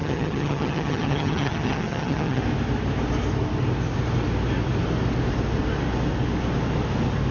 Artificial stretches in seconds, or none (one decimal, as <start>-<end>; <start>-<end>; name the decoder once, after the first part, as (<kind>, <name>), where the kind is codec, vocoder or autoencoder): 0.0-2.4 (vocoder, HiFi-GAN)